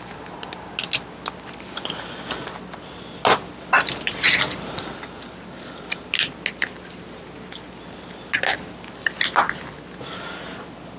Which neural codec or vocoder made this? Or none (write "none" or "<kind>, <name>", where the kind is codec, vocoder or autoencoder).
none